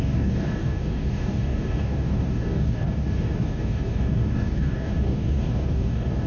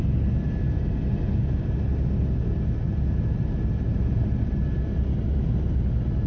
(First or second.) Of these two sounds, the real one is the second